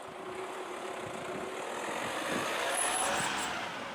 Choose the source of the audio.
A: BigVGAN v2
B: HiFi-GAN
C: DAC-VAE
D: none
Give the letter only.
D